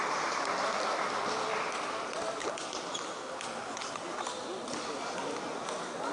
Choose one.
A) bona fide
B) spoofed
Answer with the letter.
A